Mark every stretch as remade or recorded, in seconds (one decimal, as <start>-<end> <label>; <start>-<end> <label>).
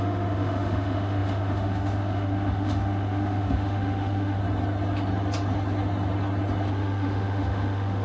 0.0-4.4 remade; 4.4-6.7 recorded; 6.7-8.0 remade